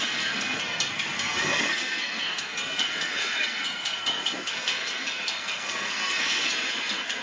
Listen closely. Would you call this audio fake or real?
fake